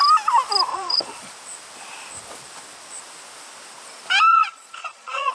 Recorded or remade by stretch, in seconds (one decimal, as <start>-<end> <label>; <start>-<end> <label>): 0.0-0.7 recorded; 0.7-1.3 remade; 1.3-4.3 recorded; 4.3-5.3 remade